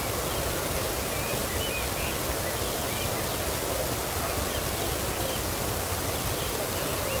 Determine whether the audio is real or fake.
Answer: real